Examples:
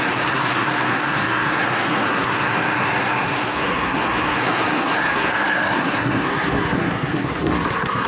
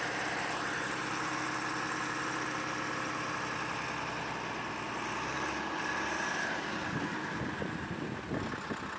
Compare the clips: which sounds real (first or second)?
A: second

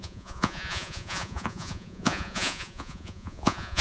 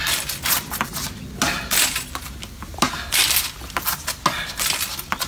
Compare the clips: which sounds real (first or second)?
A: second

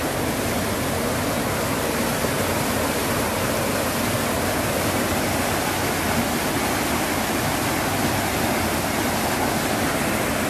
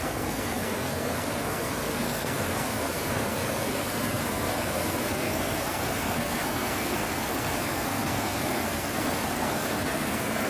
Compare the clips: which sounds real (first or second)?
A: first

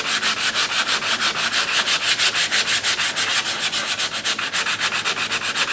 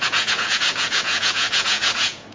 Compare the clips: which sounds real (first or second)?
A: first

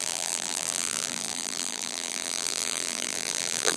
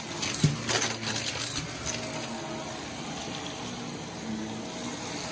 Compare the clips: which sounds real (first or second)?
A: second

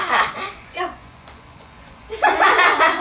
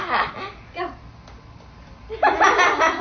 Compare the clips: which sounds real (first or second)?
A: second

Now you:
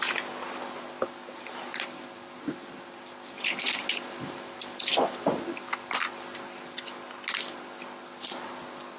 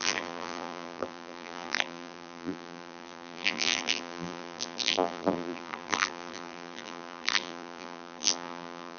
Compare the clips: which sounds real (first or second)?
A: first